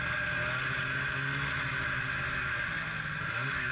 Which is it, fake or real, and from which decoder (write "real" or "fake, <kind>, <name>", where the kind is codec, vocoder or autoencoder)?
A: real